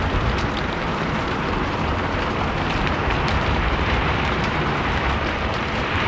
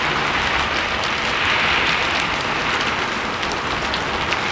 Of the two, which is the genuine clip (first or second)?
second